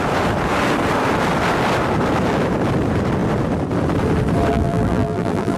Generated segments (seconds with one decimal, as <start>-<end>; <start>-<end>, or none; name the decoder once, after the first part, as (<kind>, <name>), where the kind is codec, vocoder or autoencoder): 4.5-5.6 (vocoder, BigVGAN v2)